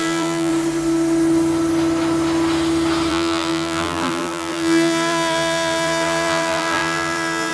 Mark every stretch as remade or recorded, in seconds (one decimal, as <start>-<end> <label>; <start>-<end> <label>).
0.0-0.5 remade; 0.5-3.1 recorded; 3.1-7.5 remade